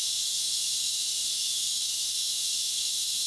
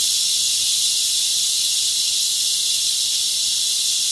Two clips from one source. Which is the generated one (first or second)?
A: first